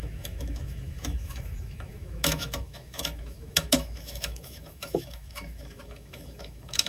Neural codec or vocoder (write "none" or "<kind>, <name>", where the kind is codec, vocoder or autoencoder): autoencoder, DAC-VAE